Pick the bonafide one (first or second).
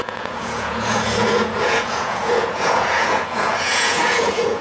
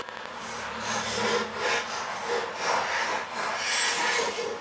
second